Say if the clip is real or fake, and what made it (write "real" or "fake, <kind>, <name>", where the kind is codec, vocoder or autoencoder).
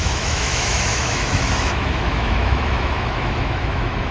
fake, autoencoder, DAC-VAE